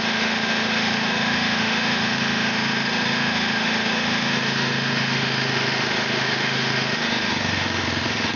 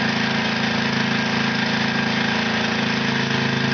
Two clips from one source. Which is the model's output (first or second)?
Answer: first